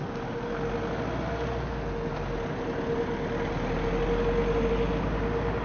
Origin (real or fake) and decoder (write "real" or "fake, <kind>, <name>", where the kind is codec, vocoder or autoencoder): real